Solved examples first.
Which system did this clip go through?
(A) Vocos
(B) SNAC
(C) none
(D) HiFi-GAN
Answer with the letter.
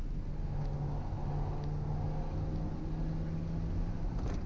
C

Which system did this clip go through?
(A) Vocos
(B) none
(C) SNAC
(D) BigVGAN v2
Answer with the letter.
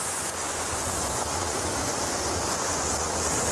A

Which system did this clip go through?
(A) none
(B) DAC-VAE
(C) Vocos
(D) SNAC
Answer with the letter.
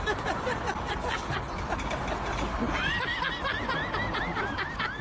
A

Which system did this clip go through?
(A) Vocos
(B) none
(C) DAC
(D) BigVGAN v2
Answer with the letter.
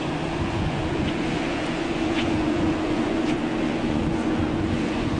A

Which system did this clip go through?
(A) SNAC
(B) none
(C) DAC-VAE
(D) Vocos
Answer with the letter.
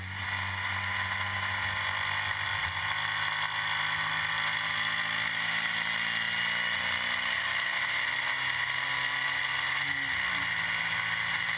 B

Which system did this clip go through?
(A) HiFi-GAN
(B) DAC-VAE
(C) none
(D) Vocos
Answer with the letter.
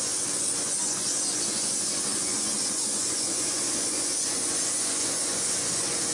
D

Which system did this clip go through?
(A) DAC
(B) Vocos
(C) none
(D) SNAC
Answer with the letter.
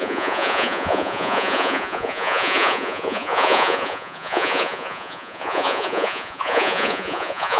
B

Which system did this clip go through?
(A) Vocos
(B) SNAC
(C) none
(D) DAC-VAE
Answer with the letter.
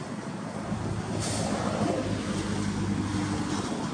C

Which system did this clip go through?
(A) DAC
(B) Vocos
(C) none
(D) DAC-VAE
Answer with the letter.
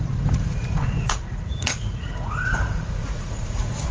B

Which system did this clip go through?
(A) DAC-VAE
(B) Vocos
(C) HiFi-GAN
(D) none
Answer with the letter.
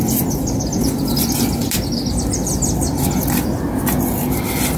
D